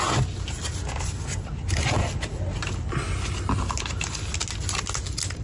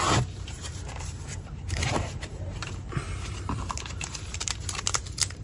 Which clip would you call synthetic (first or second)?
second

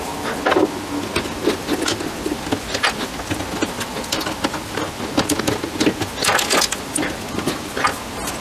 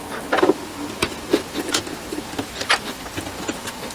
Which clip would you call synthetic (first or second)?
second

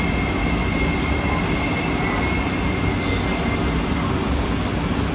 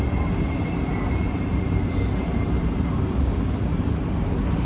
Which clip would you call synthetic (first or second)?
second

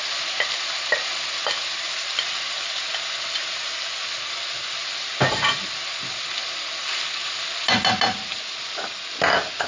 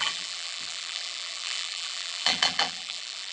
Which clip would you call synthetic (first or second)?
second